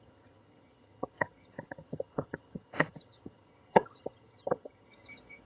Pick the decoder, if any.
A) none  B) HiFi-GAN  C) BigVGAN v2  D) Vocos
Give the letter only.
B